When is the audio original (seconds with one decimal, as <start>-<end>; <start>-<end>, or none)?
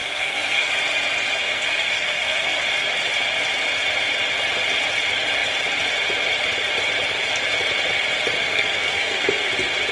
0.7-1.4; 2.6-8.4; 9.5-9.9